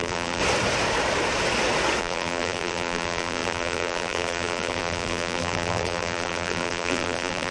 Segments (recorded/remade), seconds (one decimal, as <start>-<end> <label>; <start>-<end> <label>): 0.0-0.4 remade; 0.4-2.0 recorded; 2.0-7.5 remade